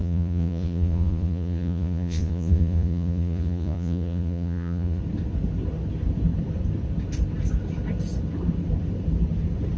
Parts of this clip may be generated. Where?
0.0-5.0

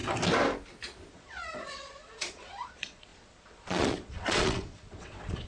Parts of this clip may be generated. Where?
1.1-5.5

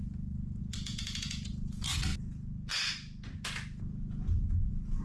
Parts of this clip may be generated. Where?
0.6-2.1; 3.8-5.0

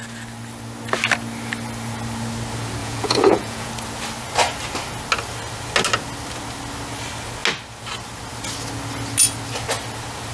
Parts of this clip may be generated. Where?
2.8-3.7

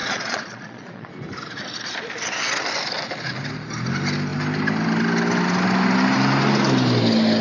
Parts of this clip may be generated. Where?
0.0-1.1

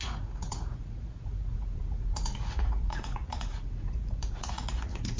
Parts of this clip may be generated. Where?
0.0-5.2